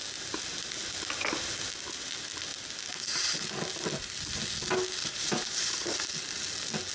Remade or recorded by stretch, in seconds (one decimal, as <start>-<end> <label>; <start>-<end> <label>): 0.0-5.0 recorded; 5.0-6.1 remade; 6.1-6.9 recorded